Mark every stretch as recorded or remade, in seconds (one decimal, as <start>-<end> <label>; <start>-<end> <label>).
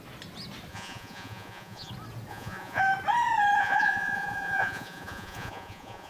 0.0-0.7 recorded; 0.7-1.9 remade; 1.9-2.3 recorded; 2.3-2.8 remade; 2.8-3.6 recorded; 3.6-6.1 remade